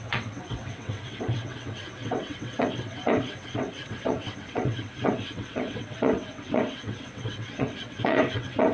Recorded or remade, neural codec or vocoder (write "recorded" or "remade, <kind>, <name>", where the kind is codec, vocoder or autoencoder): remade, vocoder, WaveNeXt